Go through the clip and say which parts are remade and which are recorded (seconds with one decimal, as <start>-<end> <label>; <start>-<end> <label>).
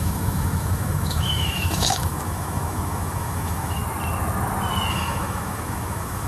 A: 0.0-3.8 remade; 3.8-4.9 recorded; 4.9-6.3 remade